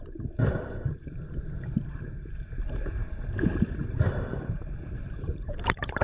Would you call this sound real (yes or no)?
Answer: no